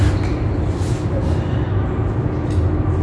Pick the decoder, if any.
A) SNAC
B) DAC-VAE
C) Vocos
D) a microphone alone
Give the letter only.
D